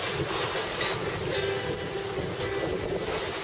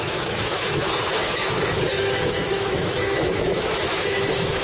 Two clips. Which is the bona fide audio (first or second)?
first